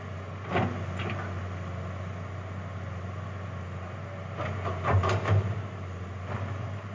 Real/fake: real